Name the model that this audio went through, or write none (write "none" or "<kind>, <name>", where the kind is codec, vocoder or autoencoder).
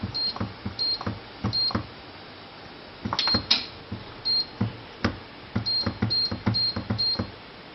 none